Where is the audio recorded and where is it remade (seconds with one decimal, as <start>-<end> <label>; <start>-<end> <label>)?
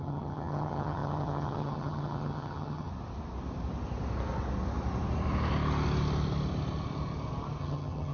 0.0-2.9 remade; 2.9-7.6 recorded; 7.6-8.1 remade